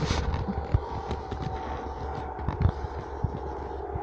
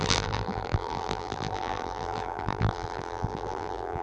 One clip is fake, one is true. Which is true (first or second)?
first